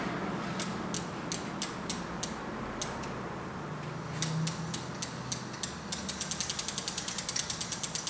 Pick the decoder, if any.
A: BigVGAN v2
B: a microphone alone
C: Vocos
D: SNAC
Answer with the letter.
B